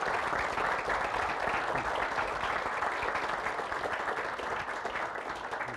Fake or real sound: real